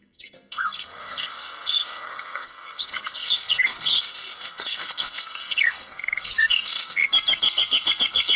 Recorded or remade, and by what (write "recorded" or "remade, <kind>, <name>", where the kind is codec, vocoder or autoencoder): remade, codec, SNAC